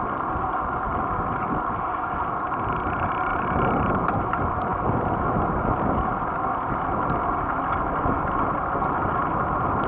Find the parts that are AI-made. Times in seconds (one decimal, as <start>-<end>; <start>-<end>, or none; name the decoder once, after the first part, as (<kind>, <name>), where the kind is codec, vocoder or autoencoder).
3.3-4.1 (vocoder, BigVGAN v2)